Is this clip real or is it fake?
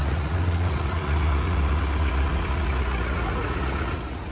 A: fake